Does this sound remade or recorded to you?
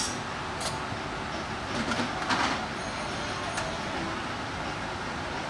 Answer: recorded